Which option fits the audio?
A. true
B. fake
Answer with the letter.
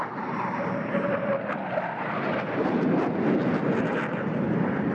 A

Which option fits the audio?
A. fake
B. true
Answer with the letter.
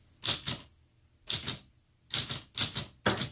B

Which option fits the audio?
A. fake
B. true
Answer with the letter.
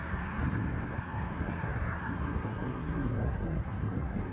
A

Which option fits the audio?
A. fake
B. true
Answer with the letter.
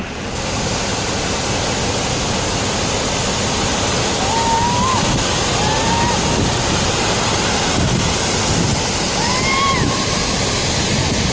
B